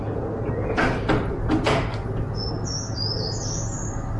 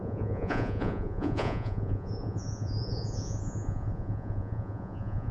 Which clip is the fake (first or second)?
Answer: second